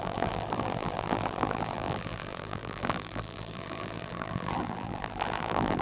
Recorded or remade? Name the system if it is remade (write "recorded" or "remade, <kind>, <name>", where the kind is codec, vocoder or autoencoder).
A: remade, vocoder, BigVGAN v2